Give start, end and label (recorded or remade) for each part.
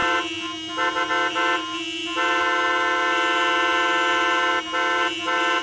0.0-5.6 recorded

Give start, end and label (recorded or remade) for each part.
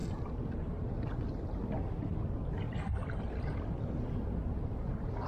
0.0-5.3 recorded